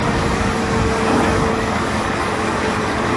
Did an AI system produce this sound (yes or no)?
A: yes